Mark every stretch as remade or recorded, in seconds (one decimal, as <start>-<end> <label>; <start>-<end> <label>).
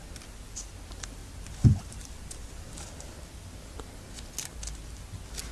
0.0-5.5 recorded